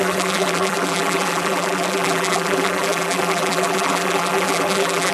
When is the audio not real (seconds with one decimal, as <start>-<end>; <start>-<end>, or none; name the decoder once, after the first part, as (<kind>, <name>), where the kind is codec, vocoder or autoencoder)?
0.0-5.1 (vocoder, BigVGAN v2)